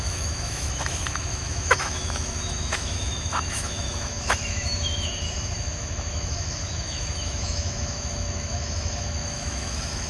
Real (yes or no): no